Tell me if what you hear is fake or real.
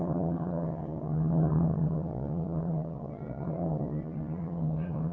fake